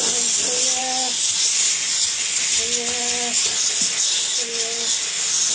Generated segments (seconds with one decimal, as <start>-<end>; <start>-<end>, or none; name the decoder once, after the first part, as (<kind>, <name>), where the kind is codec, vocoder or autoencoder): none